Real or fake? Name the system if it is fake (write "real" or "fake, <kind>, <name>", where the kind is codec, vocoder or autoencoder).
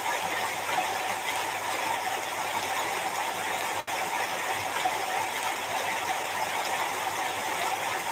real